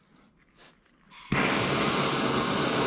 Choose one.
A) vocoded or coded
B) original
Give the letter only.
B